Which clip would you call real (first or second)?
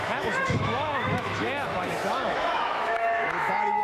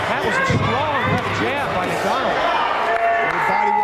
second